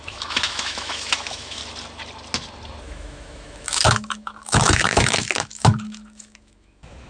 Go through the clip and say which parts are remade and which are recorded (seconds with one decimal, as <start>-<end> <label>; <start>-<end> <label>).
0.0-1.6 remade; 1.6-2.8 recorded; 2.8-7.1 remade

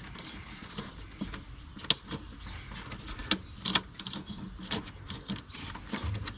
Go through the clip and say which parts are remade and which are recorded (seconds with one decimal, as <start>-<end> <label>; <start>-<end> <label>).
0.0-6.4 recorded

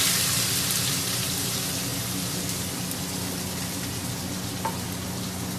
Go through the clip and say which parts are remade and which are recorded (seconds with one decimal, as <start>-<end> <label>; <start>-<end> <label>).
0.0-5.6 recorded

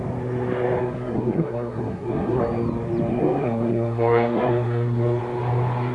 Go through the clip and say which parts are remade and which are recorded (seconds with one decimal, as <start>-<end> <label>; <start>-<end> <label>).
0.0-0.8 recorded; 0.8-2.4 remade; 2.4-3.1 recorded; 3.1-5.2 remade; 5.2-5.9 recorded